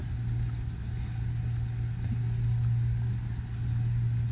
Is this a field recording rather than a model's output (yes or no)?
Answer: yes